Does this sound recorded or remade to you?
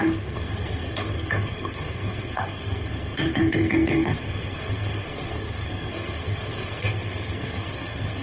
remade